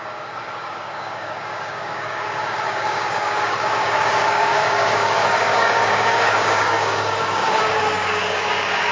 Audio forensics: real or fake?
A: fake